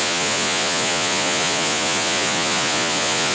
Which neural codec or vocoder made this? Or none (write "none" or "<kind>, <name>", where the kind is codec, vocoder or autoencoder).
vocoder, Vocos